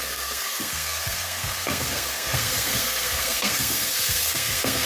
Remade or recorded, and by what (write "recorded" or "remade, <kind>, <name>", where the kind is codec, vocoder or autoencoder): remade, codec, SNAC